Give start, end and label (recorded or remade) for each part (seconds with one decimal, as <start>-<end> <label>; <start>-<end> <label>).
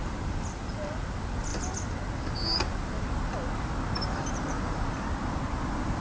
0.0-6.0 recorded